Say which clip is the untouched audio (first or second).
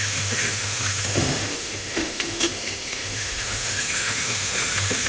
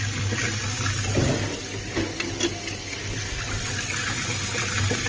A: second